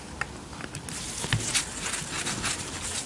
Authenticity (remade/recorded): recorded